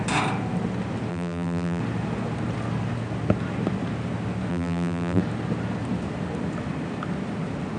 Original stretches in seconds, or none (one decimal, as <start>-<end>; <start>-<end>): 0.0-1.1; 1.8-4.5; 5.2-7.8